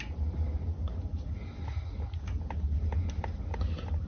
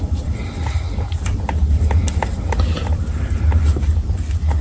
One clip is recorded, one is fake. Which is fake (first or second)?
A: second